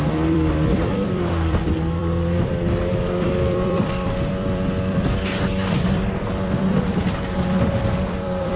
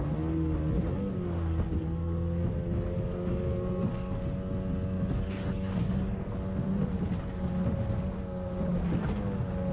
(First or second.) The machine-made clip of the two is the first